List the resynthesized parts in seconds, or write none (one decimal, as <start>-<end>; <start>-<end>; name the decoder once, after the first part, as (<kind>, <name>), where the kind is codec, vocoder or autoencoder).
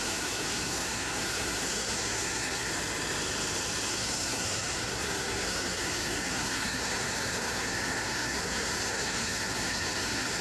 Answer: 0.0-2.7 (codec, SNAC); 3.9-10.4